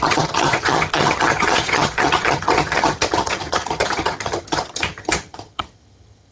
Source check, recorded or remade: remade